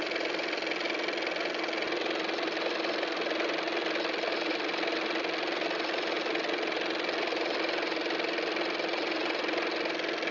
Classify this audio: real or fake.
real